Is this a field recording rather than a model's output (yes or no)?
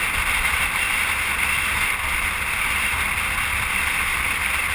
yes